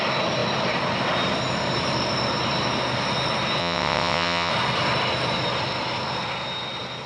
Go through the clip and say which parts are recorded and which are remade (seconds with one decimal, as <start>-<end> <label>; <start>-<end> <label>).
0.0-3.6 recorded; 3.6-4.5 remade; 4.5-7.1 recorded